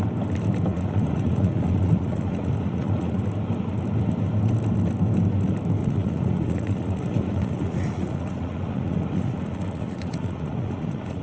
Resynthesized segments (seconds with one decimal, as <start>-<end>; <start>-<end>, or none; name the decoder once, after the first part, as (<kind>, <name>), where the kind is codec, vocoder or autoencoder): 0.7-3.2 (vocoder, Vocos); 5.8-11.2